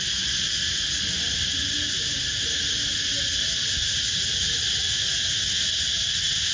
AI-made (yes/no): no